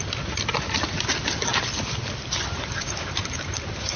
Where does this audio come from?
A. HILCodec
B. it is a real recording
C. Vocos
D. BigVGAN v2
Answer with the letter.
B